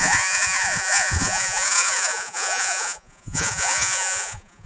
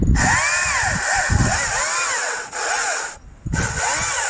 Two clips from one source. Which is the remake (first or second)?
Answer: first